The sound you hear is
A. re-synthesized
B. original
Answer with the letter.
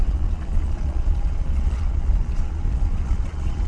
A